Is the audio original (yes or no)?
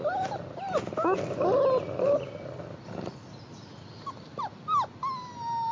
yes